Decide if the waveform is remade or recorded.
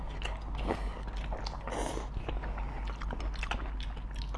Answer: recorded